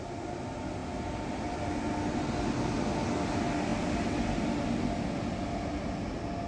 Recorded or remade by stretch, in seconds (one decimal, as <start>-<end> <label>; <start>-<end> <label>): 0.0-6.5 recorded